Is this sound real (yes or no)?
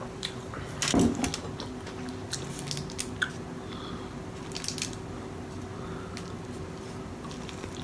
yes